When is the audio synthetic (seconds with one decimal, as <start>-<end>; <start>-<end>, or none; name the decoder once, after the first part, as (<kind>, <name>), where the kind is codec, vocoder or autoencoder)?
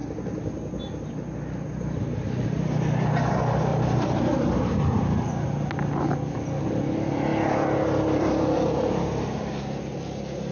3.7-5.0 (vocoder, BigVGAN v2); 7.3-9.4